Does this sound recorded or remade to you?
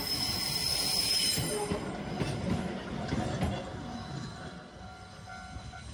recorded